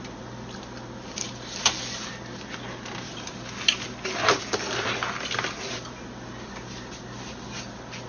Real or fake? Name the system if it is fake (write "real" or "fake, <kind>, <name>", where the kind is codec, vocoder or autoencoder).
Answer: real